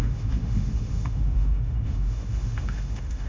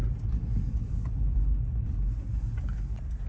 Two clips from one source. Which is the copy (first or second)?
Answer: first